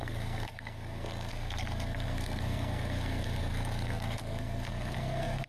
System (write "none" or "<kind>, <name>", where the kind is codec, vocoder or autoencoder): codec, SNAC